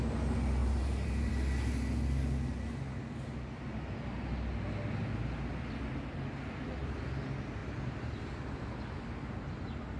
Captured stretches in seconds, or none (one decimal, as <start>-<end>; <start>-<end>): 0.0-0.6; 1.3-7.6; 8.3-10.0